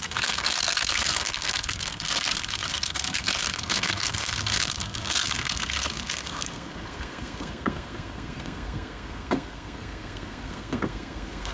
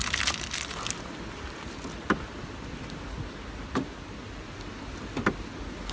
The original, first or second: second